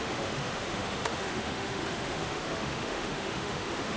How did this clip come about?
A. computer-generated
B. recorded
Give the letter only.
A